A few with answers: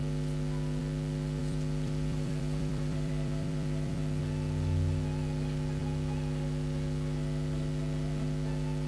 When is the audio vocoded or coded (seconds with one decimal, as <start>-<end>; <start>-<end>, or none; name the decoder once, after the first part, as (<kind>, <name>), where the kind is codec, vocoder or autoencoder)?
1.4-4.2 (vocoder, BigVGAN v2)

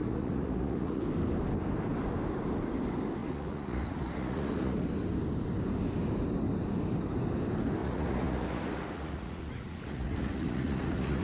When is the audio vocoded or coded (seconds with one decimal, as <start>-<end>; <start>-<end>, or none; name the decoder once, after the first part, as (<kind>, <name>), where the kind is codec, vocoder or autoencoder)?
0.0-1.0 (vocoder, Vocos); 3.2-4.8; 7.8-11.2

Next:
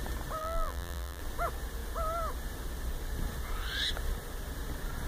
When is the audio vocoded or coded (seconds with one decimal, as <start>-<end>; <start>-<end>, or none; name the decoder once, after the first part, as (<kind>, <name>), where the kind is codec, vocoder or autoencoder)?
0.4-1.2 (vocoder, BigVGAN v2)

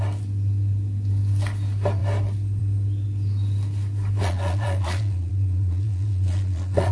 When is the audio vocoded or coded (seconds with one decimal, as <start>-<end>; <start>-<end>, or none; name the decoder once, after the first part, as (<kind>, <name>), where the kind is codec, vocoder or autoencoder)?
4.2-6.9 (vocoder, Vocos)

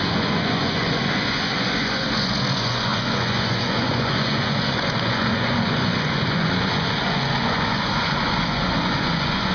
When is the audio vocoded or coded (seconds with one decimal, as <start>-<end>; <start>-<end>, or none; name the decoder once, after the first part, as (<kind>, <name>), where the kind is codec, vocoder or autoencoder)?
0.0-9.5 (vocoder, Vocos)

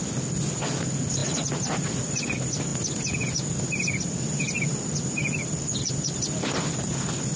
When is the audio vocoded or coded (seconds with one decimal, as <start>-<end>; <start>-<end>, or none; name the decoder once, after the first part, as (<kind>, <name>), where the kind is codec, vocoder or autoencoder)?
none

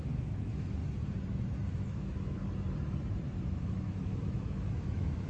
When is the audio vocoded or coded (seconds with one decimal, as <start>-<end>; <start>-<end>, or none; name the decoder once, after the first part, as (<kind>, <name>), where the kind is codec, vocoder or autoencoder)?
0.0-0.8 (autoencoder, DAC-VAE); 1.7-2.4; 3.5-5.3

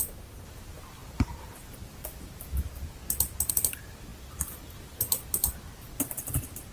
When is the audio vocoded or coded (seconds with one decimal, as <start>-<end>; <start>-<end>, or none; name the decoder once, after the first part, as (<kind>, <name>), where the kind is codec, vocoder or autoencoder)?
0.0-3.0 (vocoder, BigVGAN v2); 3.5-6.7